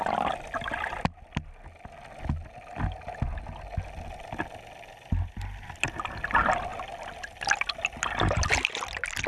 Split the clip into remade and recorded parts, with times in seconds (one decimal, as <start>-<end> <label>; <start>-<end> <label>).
0.0-9.3 recorded